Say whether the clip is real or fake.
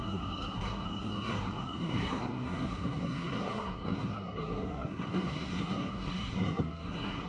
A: fake